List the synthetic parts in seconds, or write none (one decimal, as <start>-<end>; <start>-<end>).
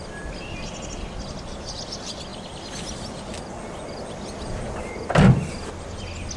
none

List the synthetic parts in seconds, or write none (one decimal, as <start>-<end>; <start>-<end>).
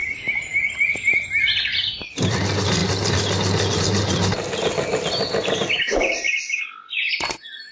none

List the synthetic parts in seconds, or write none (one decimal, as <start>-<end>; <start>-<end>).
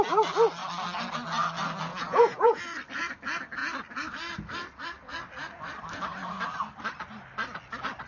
1.9-2.6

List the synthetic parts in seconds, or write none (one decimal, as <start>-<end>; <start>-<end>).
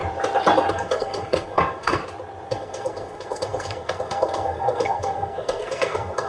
0.7-2.0; 2.5-6.3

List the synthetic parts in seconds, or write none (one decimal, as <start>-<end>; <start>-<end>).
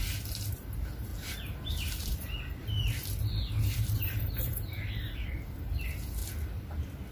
0.0-1.1; 1.7-2.1; 3.6-6.2